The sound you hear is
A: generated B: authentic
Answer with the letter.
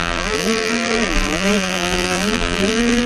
A